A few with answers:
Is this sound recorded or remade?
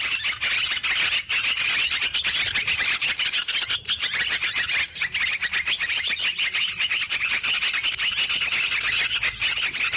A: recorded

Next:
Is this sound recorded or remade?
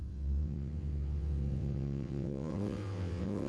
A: remade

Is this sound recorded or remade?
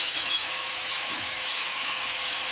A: remade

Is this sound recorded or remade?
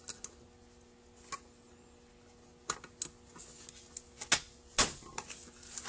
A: recorded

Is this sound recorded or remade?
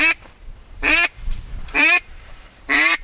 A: remade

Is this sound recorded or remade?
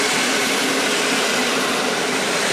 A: remade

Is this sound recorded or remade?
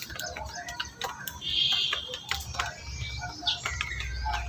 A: recorded